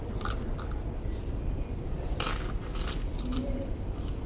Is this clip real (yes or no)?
no